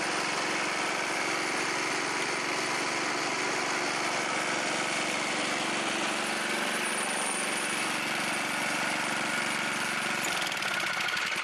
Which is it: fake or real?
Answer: real